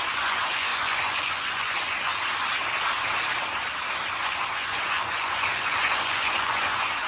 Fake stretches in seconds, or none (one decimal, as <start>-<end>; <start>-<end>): 0.0-2.1; 4.1-7.1

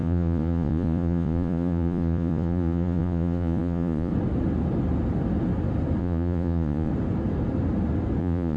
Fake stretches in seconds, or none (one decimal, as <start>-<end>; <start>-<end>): 0.0-4.1; 6.0-6.9; 8.2-8.6